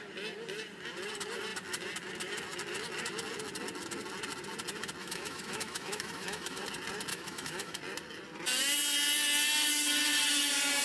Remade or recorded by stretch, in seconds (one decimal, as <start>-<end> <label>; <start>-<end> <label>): 0.0-5.0 recorded; 5.0-6.6 remade; 6.6-7.1 recorded; 7.1-7.8 remade; 7.8-10.8 recorded